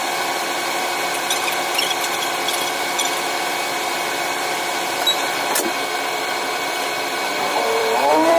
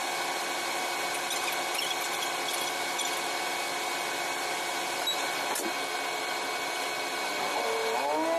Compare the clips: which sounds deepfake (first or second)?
first